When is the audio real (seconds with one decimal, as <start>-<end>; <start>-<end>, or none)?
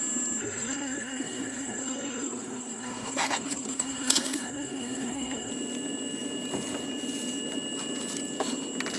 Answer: 0.0-0.4; 5.5-9.0